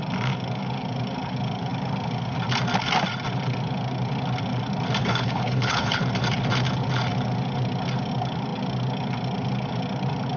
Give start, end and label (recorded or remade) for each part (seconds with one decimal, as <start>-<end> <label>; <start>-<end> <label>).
0.0-5.0 recorded; 5.0-6.0 remade; 6.0-10.4 recorded